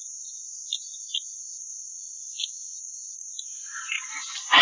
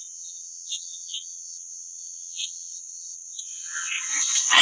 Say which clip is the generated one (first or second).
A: second